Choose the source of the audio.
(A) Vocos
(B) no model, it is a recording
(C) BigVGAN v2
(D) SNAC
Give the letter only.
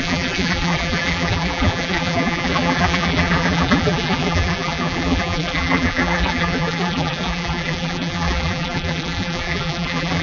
C